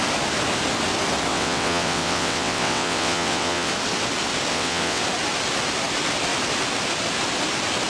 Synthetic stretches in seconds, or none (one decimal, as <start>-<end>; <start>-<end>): 1.3-3.7; 4.5-5.0